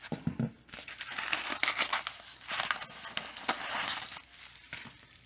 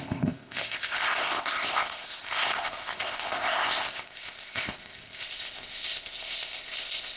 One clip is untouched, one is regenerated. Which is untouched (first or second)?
first